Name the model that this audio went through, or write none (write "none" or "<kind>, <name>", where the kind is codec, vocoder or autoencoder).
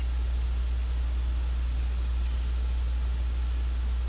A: none